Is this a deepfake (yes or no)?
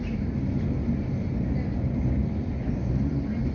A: no